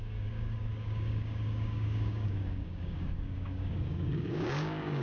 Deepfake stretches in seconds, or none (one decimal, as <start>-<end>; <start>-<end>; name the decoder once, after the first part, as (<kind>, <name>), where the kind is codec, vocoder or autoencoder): 0.0-5.0 (codec, DAC)

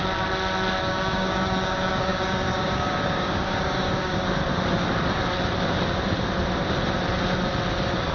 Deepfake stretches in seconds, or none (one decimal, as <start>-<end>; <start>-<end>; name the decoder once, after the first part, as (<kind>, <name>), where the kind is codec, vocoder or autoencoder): 0.8-4.4 (codec, DAC)

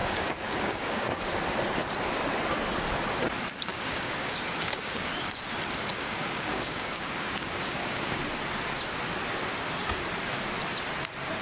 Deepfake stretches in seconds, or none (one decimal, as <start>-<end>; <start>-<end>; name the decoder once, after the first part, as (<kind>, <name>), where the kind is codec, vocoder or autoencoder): 0.0-1.2 (codec, DAC); 3.7-5.1; 5.9-8.2

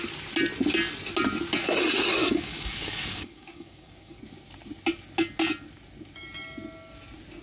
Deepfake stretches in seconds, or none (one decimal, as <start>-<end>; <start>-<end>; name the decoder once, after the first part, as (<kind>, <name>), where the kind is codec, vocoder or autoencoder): 2.2-4.2 (codec, DAC)

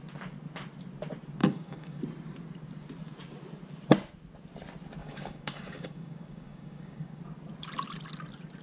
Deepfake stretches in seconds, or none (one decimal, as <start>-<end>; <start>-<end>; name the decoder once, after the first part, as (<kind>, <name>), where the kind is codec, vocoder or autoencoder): 1.4-2.0 (codec, DAC); 5.0-7.2

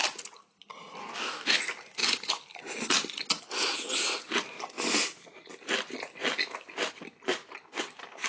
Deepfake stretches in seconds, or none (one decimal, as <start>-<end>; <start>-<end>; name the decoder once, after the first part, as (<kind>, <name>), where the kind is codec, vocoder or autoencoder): 1.0-1.6 (codec, DAC)